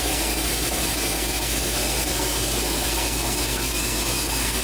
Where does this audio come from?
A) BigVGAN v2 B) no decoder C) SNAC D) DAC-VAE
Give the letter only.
C